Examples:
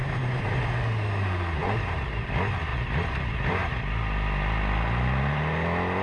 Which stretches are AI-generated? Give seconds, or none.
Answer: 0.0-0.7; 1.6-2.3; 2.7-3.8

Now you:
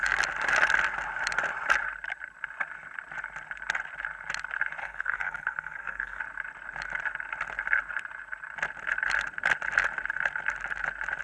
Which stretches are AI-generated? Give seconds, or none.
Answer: 4.8-6.2

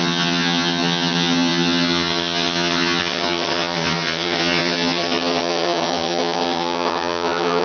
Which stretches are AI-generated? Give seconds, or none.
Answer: 0.0-7.6

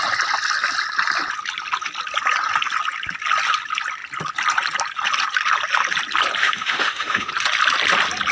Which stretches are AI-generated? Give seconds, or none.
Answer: 6.4-7.3